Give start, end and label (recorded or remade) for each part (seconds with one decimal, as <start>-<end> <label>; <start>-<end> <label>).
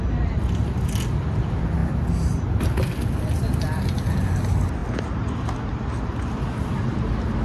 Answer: 0.0-7.4 recorded